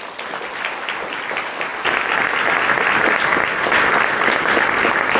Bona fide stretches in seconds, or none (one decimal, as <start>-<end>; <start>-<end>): 0.0-5.2